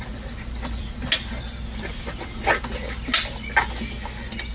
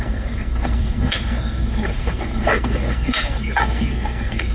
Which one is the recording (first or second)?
first